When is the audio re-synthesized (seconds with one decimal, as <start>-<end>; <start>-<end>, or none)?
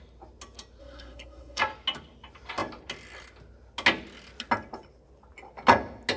0.8-1.6